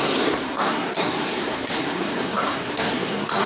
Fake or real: fake